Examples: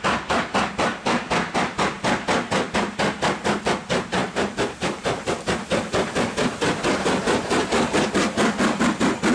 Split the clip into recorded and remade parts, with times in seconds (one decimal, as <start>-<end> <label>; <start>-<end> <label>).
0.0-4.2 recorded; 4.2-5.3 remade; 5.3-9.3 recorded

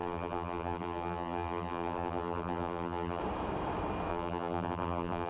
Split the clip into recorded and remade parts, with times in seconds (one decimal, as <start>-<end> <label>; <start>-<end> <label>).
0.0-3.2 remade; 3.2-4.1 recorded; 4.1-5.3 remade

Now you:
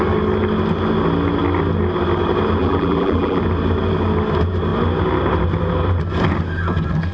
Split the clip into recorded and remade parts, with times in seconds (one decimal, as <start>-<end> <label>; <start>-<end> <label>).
0.0-2.6 recorded; 2.6-3.4 remade; 3.4-7.1 recorded

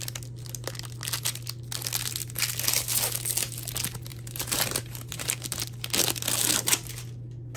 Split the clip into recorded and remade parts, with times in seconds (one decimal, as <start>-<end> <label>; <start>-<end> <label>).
0.0-4.1 recorded; 4.1-5.6 remade; 5.6-7.6 recorded

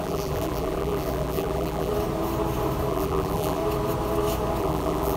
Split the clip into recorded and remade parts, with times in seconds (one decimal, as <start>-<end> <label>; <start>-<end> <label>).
0.0-1.9 remade; 1.9-2.9 recorded; 2.9-3.6 remade; 3.6-4.6 recorded; 4.6-5.2 remade

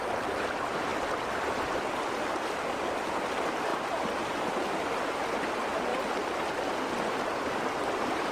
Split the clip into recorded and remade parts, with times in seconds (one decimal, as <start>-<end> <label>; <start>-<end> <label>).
0.0-5.9 remade; 5.9-6.5 recorded; 6.5-8.3 remade

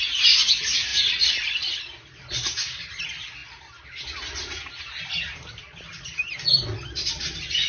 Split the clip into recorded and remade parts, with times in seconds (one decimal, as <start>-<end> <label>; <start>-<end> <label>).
0.0-0.9 recorded; 0.9-1.5 remade; 1.5-7.7 recorded

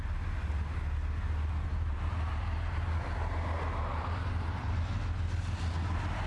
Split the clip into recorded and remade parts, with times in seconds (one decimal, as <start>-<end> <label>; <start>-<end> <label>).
0.0-1.7 recorded; 1.7-4.8 remade; 4.8-6.3 recorded